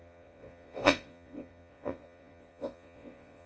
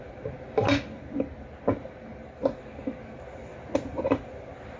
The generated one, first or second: first